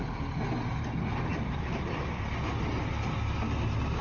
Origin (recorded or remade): recorded